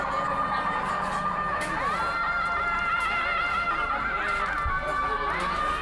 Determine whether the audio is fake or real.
real